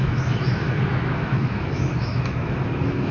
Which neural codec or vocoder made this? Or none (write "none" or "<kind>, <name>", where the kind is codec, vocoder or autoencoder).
autoencoder, DAC-VAE